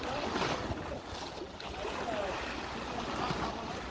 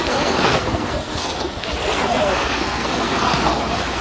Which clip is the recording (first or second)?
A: first